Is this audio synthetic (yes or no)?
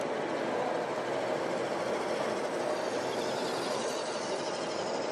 no